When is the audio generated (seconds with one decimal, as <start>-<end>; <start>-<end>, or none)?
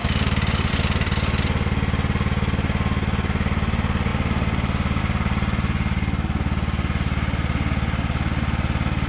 none